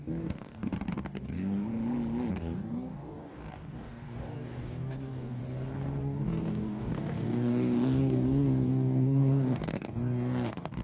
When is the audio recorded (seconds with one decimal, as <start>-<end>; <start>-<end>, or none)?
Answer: 1.7-2.3; 5.4-6.0